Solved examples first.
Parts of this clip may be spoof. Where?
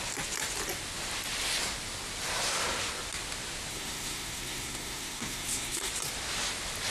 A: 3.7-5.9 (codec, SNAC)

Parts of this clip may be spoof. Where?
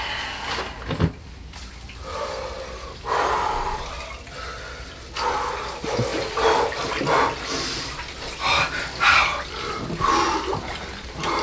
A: none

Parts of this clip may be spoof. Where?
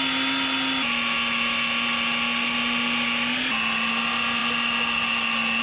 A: none